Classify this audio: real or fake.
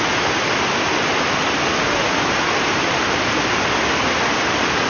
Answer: real